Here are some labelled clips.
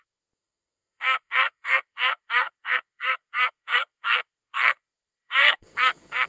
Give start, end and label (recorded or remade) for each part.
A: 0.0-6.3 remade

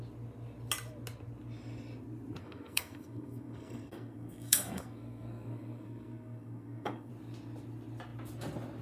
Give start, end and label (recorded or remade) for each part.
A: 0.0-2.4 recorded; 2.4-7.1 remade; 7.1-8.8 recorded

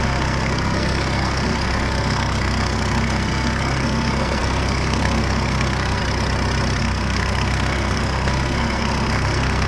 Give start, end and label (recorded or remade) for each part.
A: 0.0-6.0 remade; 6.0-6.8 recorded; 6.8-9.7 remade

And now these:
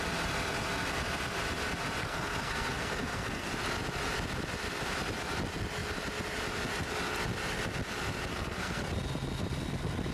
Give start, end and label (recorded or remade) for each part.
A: 0.0-2.0 recorded; 2.0-3.5 remade; 3.5-8.3 recorded; 8.3-8.9 remade; 8.9-10.1 recorded

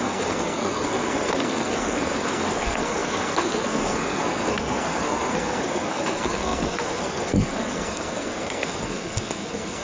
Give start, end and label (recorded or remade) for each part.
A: 0.0-9.8 remade

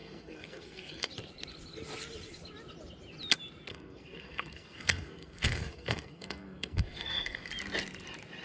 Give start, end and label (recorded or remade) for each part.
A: 0.0-1.1 remade; 1.1-3.7 recorded; 3.7-7.5 remade; 7.5-8.4 recorded

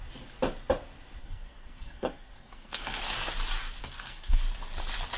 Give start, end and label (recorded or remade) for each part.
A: 0.0-1.2 recorded; 1.2-3.0 remade; 3.0-3.8 recorded; 3.8-4.4 remade; 4.4-5.2 recorded